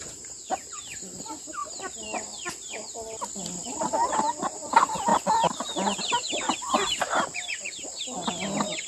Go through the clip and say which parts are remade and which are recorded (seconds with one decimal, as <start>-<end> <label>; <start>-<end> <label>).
0.0-1.6 remade; 1.6-4.1 recorded; 4.1-5.1 remade; 5.1-6.0 recorded; 6.0-8.9 remade